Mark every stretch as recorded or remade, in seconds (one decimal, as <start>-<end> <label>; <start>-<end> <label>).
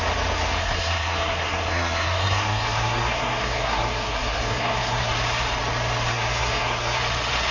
0.0-0.6 recorded; 0.6-5.1 remade; 5.1-6.1 recorded; 6.1-7.0 remade; 7.0-7.5 recorded